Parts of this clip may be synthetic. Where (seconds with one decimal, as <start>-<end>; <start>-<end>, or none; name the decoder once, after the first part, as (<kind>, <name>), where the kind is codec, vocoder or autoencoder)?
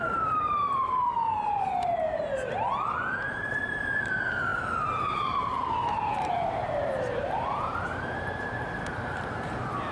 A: 0.0-6.6 (vocoder, BigVGAN v2); 7.2-9.9